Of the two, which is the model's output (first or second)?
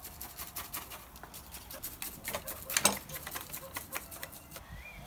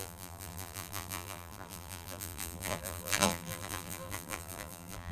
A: second